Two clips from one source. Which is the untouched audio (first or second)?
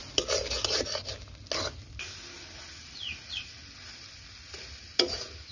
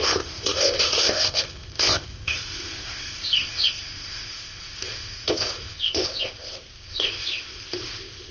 first